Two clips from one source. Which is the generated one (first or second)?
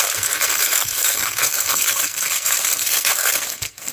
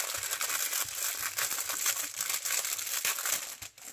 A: first